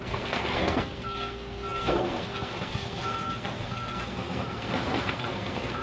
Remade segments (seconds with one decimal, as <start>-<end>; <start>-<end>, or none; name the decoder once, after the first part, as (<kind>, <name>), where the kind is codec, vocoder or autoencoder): 0.0-5.8 (codec, SNAC)